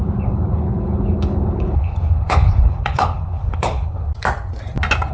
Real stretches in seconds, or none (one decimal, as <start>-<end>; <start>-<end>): 4.1-5.1